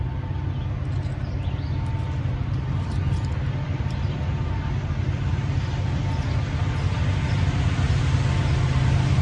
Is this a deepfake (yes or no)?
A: no